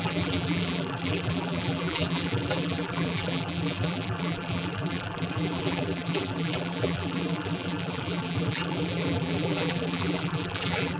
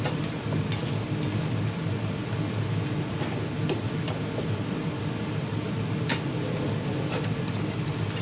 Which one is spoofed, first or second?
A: first